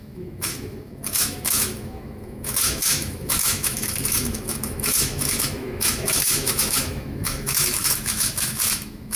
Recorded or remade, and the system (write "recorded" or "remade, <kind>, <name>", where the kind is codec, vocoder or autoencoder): remade, autoencoder, DAC-VAE